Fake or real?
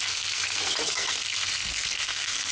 fake